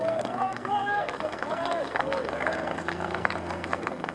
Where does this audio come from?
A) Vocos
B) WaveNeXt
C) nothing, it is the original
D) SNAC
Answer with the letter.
D